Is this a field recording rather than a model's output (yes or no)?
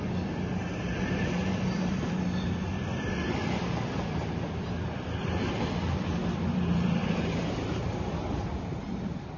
no